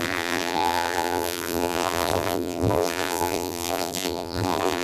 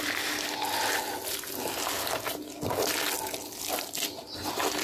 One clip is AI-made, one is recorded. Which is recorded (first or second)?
second